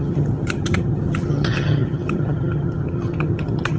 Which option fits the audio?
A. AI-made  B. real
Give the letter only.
A